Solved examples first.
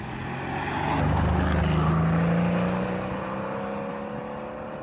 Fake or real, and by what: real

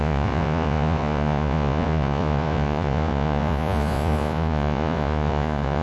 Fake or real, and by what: fake, vocoder, Vocos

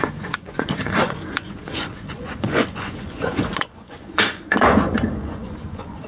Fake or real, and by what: fake, vocoder, Vocos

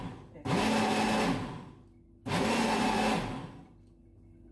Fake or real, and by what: real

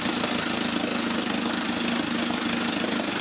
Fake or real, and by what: real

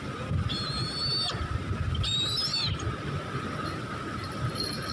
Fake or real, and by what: real